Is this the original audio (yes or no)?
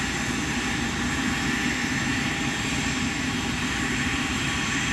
no